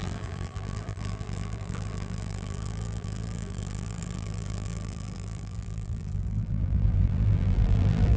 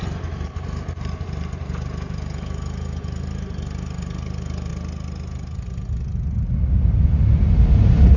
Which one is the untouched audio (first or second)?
second